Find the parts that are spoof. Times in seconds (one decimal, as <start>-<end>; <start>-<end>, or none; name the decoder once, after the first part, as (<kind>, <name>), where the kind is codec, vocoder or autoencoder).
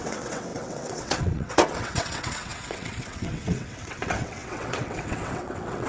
0.0-5.9 (vocoder, WaveNeXt)